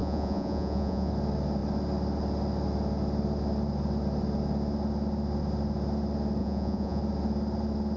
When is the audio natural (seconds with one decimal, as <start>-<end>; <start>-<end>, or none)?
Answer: 1.1-6.4; 7.0-8.0